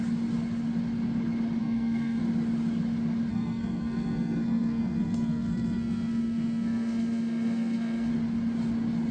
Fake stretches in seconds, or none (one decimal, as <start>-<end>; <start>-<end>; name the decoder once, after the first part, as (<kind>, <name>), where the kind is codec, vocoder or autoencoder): 1.6-2.2 (codec, SNAC); 3.3-8.1